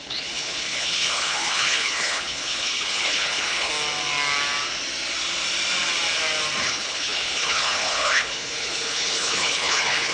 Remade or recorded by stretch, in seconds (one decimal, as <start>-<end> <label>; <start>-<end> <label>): 0.0-3.7 remade; 3.7-6.6 recorded; 6.6-10.1 remade